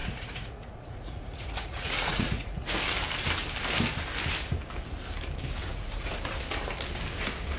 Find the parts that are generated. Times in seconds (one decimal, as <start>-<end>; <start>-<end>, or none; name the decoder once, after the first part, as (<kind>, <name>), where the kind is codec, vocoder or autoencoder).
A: 0.0-2.7 (vocoder, Vocos); 5.6-6.1